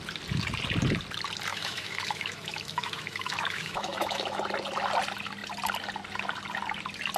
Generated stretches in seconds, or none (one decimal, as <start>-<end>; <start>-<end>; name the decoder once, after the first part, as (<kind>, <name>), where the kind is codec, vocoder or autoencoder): 1.5-4.4 (autoencoder, DAC-VAE)